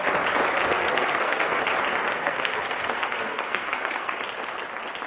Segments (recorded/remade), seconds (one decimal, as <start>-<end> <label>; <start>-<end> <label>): 0.0-0.7 recorded; 0.7-1.6 remade; 1.6-2.0 recorded; 2.0-4.1 remade; 4.1-5.1 recorded